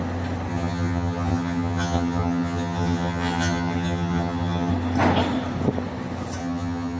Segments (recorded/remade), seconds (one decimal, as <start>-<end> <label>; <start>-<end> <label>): 0.0-0.5 recorded; 0.5-4.7 remade; 4.7-6.4 recorded; 6.4-7.0 remade